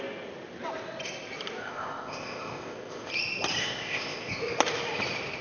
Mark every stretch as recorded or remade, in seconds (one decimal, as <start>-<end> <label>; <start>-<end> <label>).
0.0-1.6 recorded; 1.6-3.1 remade; 3.1-3.6 recorded; 3.6-4.4 remade; 4.4-5.4 recorded

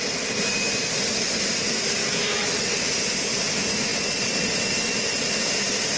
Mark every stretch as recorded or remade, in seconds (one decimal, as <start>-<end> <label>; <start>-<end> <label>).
0.0-2.0 recorded; 2.0-2.7 remade; 2.7-6.0 recorded

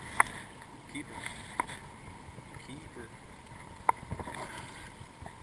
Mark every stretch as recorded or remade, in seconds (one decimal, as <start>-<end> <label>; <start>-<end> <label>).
0.0-5.4 recorded